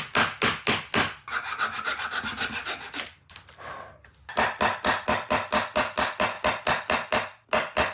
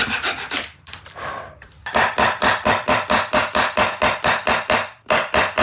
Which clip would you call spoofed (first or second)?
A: second